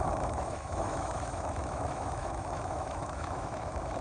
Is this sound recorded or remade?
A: remade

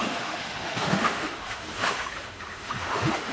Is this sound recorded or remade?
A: remade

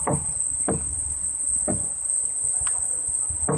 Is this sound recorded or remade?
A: recorded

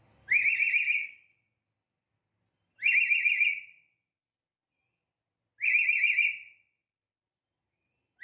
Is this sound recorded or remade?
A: recorded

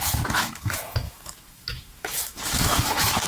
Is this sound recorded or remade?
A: remade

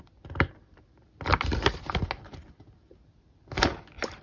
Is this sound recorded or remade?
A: recorded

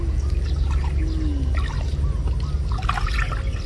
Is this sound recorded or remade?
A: recorded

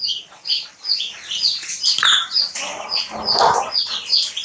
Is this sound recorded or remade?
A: recorded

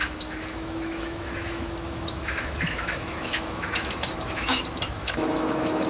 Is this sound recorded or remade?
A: remade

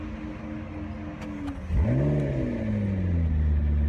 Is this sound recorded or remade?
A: recorded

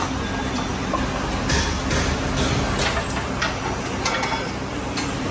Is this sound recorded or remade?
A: recorded